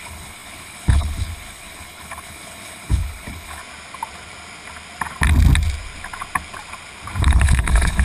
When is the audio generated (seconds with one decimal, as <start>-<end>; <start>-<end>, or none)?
0.0-3.6; 7.2-8.0